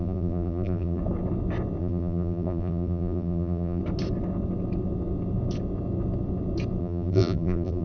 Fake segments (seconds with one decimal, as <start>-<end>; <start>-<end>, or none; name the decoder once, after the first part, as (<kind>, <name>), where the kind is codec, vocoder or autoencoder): 0.0-1.0 (vocoder, BigVGAN v2); 1.8-3.8; 6.8-7.8